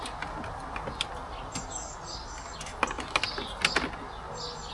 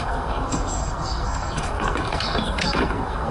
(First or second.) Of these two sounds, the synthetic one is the second